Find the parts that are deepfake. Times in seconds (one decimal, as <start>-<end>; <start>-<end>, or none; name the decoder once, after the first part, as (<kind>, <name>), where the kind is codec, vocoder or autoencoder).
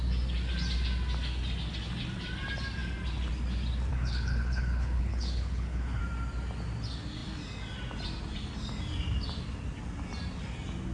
3.9-6.0 (codec, HILCodec)